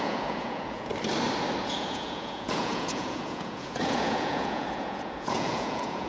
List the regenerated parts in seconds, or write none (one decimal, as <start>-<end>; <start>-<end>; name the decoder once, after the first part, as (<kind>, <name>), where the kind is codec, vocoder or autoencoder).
0.0-0.9 (vocoder, Vocos); 1.6-6.1